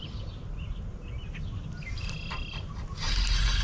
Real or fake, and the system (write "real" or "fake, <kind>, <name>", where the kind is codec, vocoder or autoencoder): real